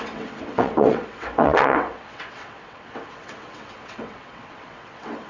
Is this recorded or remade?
remade